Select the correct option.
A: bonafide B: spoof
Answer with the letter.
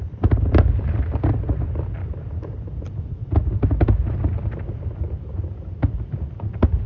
A